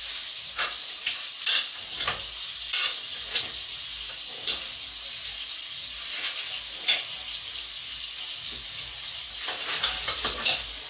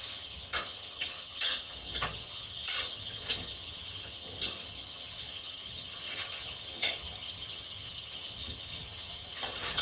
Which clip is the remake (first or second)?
second